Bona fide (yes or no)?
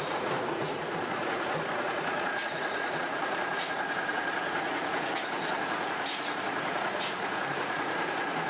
no